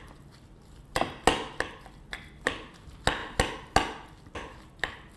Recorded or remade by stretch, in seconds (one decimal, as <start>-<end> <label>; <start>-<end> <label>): 0.0-5.2 recorded